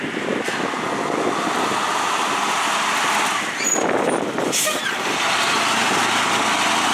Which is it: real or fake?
real